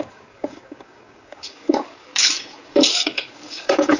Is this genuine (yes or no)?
no